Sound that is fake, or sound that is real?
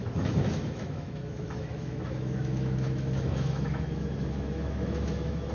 fake